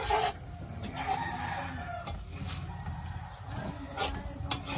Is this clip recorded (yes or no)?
yes